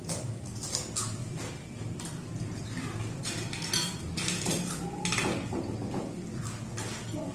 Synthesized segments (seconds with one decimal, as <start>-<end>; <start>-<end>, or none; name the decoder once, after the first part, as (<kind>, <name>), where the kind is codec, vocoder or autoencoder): none

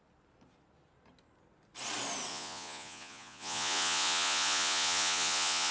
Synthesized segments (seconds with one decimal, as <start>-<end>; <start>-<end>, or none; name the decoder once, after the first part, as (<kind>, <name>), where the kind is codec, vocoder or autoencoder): 2.3-5.7 (vocoder, Vocos)

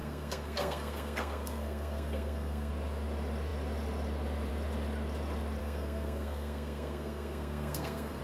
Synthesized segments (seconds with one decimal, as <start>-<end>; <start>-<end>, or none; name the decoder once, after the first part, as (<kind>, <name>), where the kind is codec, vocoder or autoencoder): 0.0-2.7 (codec, SNAC); 5.6-8.2

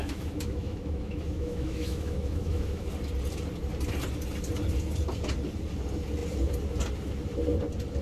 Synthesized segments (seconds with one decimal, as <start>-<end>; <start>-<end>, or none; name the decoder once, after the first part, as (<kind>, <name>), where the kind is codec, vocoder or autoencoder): 0.0-2.9 (autoencoder, DAC-VAE)